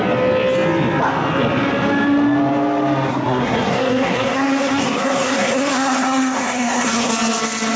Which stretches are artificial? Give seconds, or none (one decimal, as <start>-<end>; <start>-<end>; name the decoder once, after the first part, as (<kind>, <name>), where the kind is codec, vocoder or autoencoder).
3.1-7.1 (codec, SNAC)